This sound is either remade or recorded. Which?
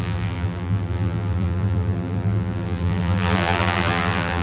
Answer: remade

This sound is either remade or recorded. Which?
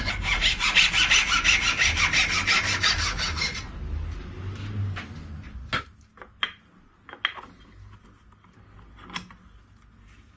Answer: recorded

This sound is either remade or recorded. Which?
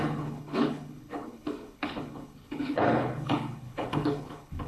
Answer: remade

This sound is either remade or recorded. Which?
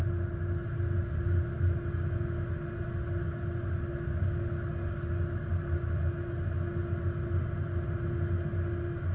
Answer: recorded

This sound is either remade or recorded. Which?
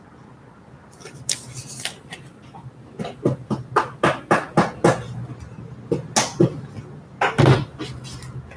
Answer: recorded